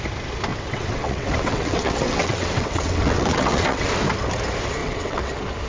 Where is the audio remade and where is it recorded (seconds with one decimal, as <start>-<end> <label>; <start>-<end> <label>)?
0.0-0.5 recorded; 0.5-3.9 remade; 3.9-4.8 recorded; 4.8-5.3 remade; 5.3-5.7 recorded